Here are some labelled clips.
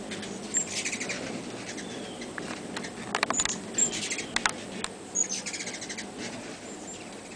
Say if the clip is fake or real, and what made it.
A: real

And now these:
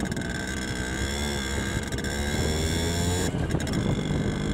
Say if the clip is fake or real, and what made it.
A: fake, vocoder, BigVGAN v2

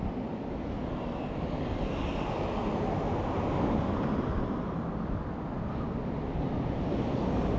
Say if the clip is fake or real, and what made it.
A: real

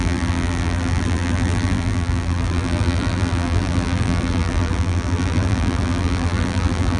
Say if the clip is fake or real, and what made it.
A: fake, vocoder, BigVGAN v2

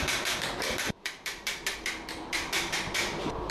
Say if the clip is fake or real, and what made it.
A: fake, vocoder, BigVGAN v2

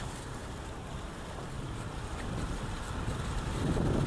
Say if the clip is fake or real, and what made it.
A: fake, vocoder, BigVGAN v2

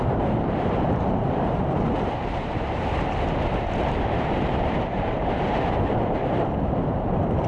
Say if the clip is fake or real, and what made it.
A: fake, vocoder, BigVGAN v2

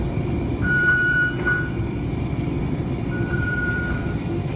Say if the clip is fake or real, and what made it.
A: fake, vocoder, BigVGAN v2